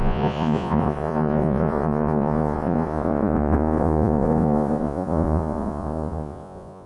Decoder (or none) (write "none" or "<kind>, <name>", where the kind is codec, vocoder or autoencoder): vocoder, Vocos